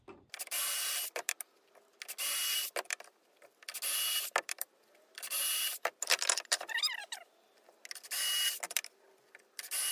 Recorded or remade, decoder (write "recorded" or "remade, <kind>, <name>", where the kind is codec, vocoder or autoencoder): recorded